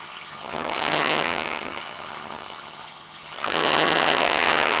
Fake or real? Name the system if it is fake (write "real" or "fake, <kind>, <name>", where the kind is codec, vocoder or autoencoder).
fake, vocoder, HiFi-GAN